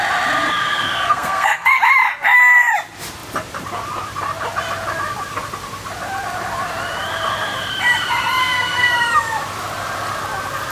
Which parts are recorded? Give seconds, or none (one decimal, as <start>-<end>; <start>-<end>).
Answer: 0.0-0.6; 1.8-8.4; 8.9-10.7